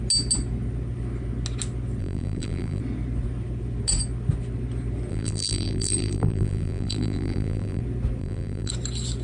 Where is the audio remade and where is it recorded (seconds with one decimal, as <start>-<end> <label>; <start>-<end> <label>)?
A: 0.0-2.0 recorded; 2.0-2.8 remade; 2.8-5.1 recorded; 5.1-7.8 remade; 7.8-8.2 recorded; 8.2-8.7 remade; 8.7-9.2 recorded